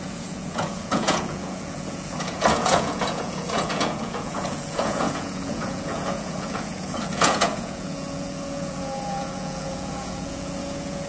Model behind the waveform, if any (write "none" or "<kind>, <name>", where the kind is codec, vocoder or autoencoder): vocoder, Vocos